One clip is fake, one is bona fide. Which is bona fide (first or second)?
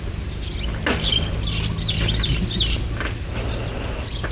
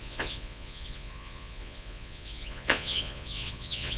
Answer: first